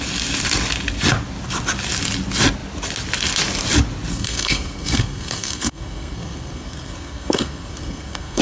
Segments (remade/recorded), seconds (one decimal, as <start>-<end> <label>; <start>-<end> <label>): 0.0-4.1 recorded; 4.1-8.4 remade